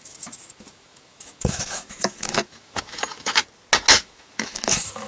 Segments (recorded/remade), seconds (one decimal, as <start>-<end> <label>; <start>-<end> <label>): 0.0-3.4 remade; 3.4-4.0 recorded; 4.0-5.1 remade